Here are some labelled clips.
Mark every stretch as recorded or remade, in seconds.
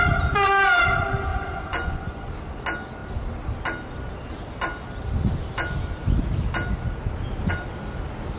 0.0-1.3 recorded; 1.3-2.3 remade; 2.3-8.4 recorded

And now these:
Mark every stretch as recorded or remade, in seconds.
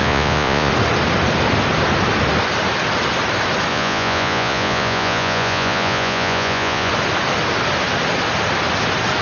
0.0-0.7 remade; 0.7-3.7 recorded; 3.7-6.9 remade; 6.9-9.2 recorded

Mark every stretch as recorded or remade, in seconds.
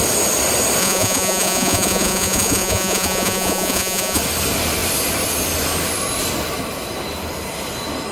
0.0-0.8 recorded; 0.8-4.2 remade; 4.2-8.1 recorded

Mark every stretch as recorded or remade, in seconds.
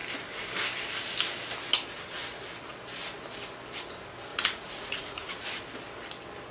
0.0-4.3 recorded; 4.3-5.3 remade; 5.3-6.5 recorded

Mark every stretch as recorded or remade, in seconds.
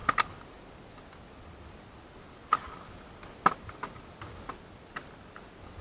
0.0-5.8 recorded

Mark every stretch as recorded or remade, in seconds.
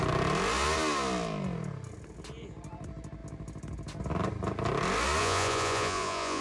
0.0-5.2 recorded; 5.2-6.4 remade